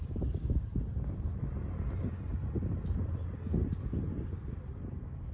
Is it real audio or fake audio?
real